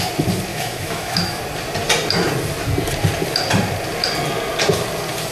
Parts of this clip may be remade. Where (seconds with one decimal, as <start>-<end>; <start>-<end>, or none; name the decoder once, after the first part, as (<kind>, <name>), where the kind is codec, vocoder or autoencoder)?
0.5-1.4 (autoencoder, DAC-VAE)